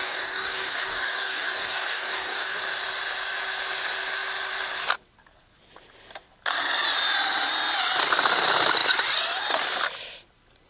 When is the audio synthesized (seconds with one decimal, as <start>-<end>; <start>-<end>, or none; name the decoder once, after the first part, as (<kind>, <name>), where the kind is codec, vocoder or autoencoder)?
0.0-2.6 (codec, DAC)